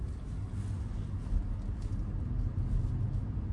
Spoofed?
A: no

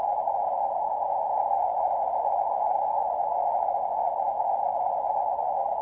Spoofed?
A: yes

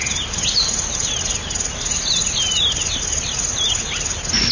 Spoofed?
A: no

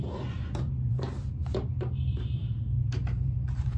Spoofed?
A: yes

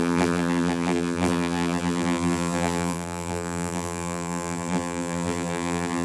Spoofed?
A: yes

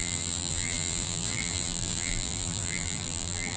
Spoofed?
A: yes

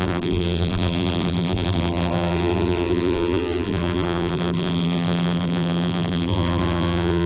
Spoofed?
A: yes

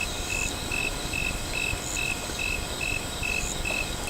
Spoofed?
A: no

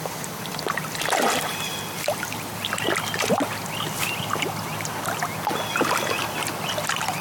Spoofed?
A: no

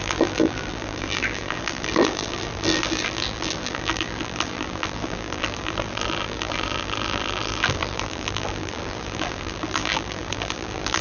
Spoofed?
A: yes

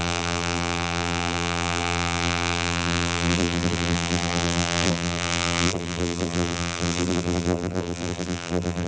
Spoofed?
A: yes